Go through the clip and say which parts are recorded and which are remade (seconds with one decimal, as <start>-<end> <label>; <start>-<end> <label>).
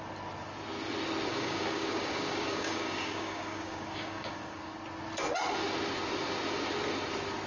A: 0.0-1.3 recorded; 1.3-4.7 remade; 4.7-7.5 recorded